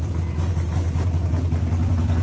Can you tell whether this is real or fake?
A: real